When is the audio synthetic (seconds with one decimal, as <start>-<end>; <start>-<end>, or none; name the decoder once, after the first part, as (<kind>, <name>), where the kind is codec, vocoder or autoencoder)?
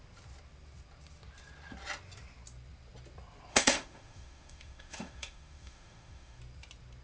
3.5-6.4 (autoencoder, DAC-VAE)